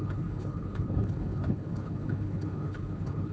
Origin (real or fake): fake